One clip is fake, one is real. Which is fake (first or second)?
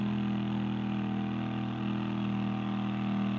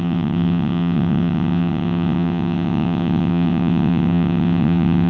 second